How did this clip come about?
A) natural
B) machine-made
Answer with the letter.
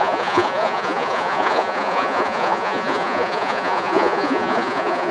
B